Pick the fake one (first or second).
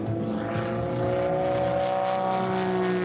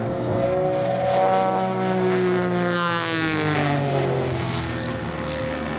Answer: second